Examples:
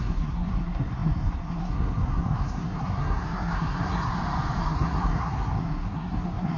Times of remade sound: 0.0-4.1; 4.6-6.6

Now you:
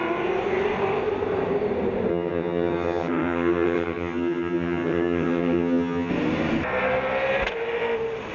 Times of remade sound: 2.1-6.1